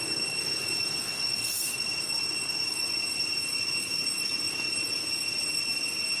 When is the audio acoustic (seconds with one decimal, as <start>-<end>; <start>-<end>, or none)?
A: 0.0-1.1; 1.8-6.2